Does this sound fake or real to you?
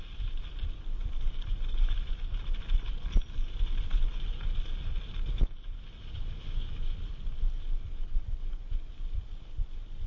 real